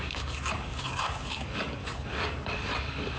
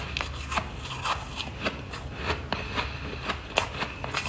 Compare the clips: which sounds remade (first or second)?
first